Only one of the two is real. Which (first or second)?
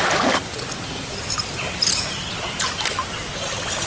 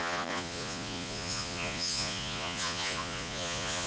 first